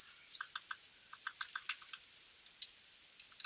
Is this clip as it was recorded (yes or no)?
yes